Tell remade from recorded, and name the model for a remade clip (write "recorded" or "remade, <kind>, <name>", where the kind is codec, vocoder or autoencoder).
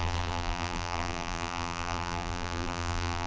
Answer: remade, vocoder, BigVGAN v2